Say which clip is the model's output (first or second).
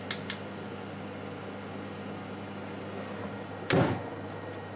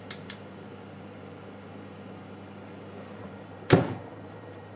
second